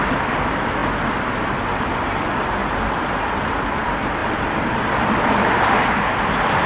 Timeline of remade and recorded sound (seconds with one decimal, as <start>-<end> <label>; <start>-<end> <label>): 0.0-2.6 recorded; 2.6-3.1 remade; 3.1-4.2 recorded; 4.2-6.7 remade